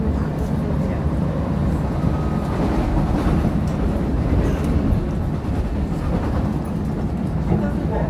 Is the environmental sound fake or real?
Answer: real